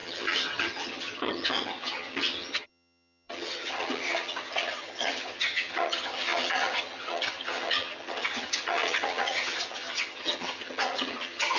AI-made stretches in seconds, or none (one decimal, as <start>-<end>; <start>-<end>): 0.0-11.6